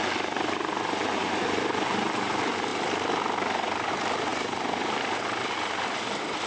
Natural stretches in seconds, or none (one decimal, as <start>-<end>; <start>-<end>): 0.0-6.5